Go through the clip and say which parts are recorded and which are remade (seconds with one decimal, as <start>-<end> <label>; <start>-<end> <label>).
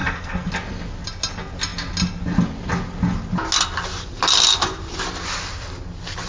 0.0-0.5 remade; 0.5-6.3 recorded